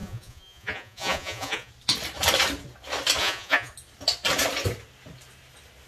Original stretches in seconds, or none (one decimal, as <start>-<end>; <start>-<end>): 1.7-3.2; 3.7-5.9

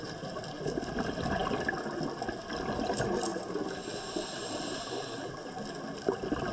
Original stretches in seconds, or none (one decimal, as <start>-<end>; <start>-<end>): 0.0-6.5

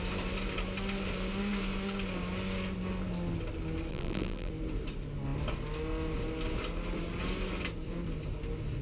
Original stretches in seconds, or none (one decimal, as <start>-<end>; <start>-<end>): 0.0-3.9; 4.5-8.8

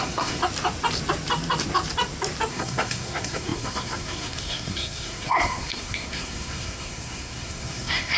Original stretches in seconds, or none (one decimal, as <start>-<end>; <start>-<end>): 0.4-2.5